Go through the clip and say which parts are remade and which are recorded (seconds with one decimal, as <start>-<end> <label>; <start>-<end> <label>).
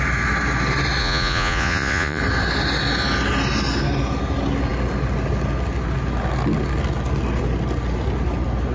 0.0-1.0 recorded; 1.0-2.2 remade; 2.2-8.7 recorded